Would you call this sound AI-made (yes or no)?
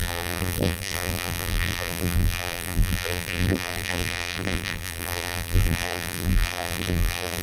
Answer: yes